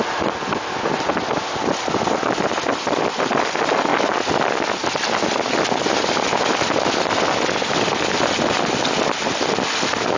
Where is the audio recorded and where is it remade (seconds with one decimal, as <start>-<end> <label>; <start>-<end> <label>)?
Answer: 0.0-10.2 recorded